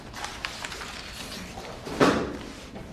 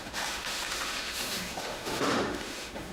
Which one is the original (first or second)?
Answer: first